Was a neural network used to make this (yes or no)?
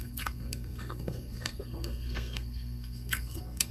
yes